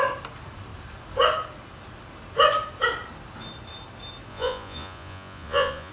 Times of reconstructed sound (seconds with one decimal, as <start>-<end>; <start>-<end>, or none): 4.3-5.9